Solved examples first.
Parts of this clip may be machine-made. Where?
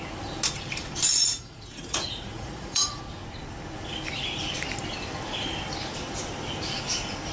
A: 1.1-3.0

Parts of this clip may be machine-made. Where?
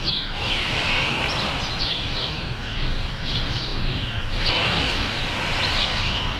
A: 0.0-1.2; 1.8-5.2; 5.8-6.4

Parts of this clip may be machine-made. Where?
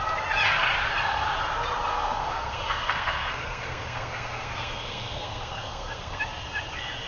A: 1.9-6.2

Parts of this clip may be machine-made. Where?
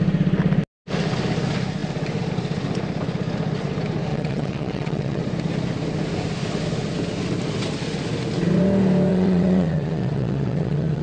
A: 4.1-5.2; 9.1-11.0